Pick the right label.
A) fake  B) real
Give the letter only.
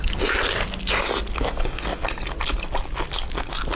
B